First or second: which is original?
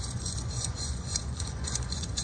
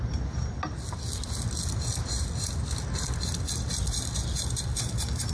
second